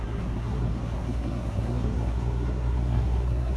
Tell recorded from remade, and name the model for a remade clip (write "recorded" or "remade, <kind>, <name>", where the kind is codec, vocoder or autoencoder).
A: remade, codec, SNAC